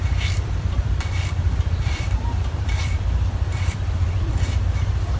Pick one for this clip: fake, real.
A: fake